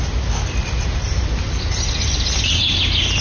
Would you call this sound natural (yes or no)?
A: yes